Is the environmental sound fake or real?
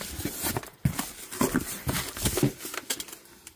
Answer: real